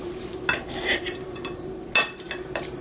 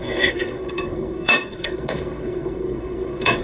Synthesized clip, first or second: second